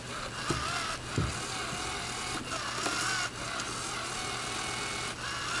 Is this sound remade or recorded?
recorded